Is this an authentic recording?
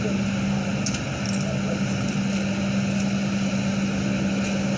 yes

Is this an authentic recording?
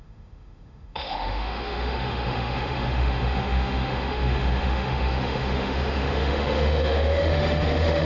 no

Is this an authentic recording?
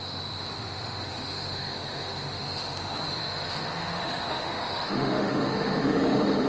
no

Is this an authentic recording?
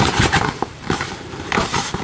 no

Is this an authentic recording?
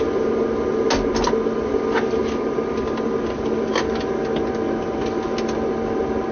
yes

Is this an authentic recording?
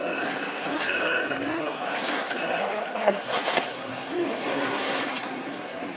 no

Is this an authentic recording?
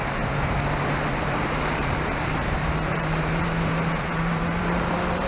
no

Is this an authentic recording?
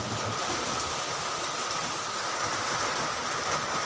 no